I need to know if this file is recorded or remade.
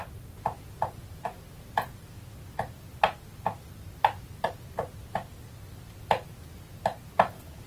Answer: recorded